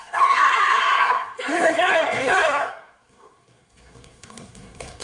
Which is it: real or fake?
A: fake